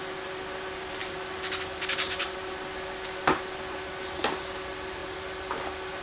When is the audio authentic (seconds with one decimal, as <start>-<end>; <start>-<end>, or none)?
0.0-6.0